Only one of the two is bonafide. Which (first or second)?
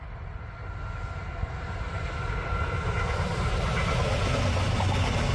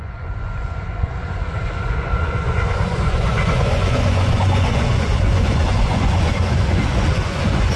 first